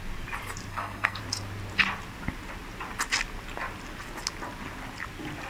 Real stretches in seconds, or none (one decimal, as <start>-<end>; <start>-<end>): 0.0-0.7; 1.2-5.5